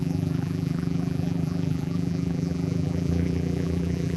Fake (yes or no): yes